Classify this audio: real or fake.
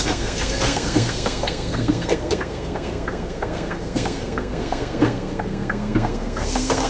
fake